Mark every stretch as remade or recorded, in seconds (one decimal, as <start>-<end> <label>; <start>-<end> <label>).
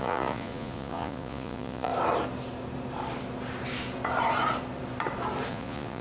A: 0.0-1.9 remade; 1.9-5.5 recorded; 5.5-6.0 remade